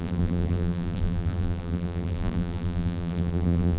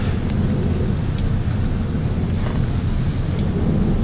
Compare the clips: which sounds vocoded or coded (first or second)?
first